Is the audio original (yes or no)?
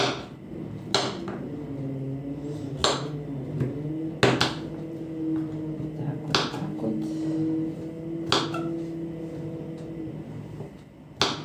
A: yes